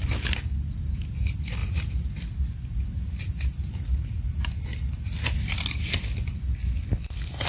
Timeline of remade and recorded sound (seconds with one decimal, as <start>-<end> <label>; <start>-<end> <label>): 0.0-7.5 recorded